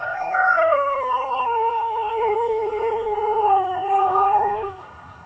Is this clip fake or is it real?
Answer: fake